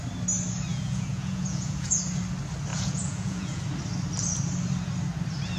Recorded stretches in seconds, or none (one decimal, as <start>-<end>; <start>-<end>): 0.0-0.7; 2.0-2.7; 3.6-5.6